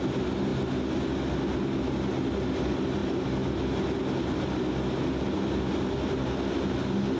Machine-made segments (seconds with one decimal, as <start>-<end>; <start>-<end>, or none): none